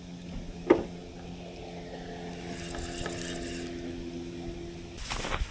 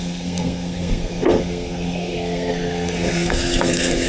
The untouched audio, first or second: first